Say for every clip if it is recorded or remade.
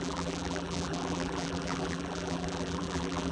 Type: remade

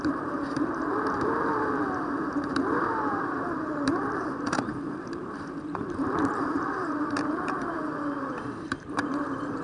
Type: remade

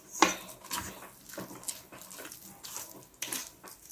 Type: recorded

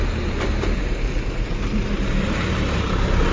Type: remade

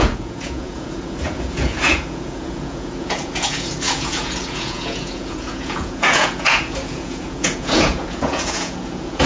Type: remade